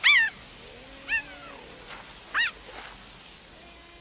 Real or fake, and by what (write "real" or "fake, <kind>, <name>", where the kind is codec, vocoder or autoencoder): real